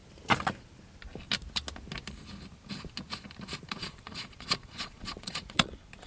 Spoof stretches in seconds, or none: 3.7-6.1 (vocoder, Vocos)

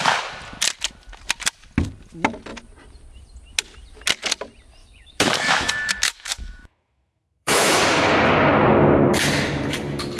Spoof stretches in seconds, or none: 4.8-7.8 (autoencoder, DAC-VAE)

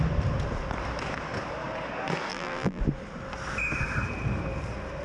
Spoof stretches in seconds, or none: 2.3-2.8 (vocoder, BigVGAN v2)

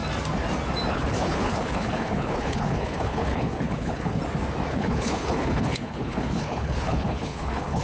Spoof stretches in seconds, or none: 0.9-4.2 (codec, HILCodec); 4.7-7.8